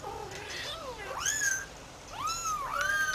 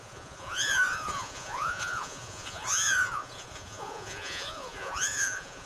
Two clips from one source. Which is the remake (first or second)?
second